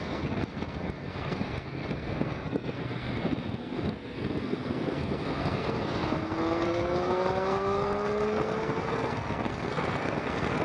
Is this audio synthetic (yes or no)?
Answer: yes